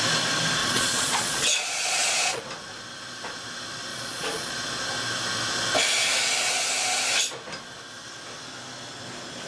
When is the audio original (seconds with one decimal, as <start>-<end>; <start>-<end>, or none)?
0.0-0.6; 2.4-3.9; 4.5-9.5